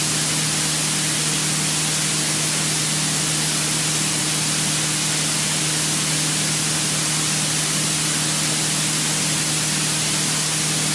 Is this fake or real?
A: real